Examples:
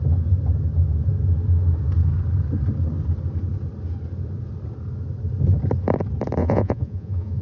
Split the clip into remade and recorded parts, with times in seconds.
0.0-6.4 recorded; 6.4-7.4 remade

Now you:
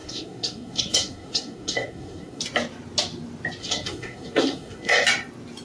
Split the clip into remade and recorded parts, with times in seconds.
0.0-2.4 remade; 2.4-3.6 recorded; 3.6-4.9 remade; 4.9-5.6 recorded

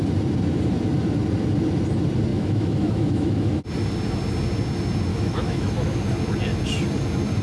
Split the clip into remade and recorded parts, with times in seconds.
0.0-2.3 recorded; 2.3-3.6 remade; 3.6-5.1 recorded; 5.1-6.0 remade; 6.0-7.4 recorded

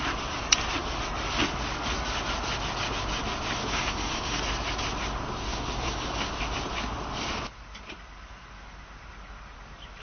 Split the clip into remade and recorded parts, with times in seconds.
0.0-3.6 recorded; 3.6-4.4 remade; 4.4-5.5 recorded; 5.5-6.3 remade; 6.3-10.0 recorded